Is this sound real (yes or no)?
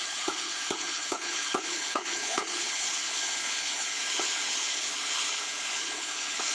no